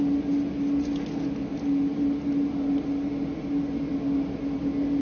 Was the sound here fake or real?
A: real